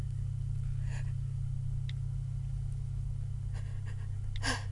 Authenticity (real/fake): real